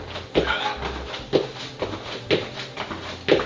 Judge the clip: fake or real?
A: real